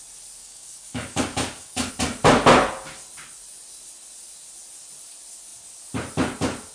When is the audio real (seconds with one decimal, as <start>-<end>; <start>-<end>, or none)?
0.0-0.4; 1.9-6.7